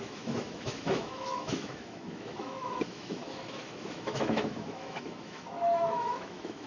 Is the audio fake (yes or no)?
yes